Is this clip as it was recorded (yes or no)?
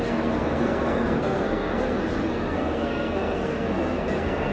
no